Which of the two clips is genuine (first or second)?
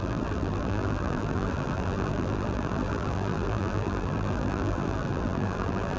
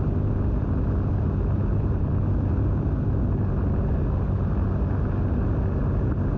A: second